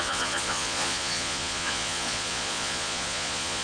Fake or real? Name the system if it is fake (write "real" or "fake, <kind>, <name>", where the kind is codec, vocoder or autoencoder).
fake, vocoder, Vocos